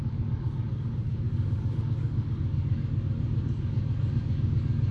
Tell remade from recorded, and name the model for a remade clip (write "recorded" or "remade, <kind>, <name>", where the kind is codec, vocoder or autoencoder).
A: remade, codec, DAC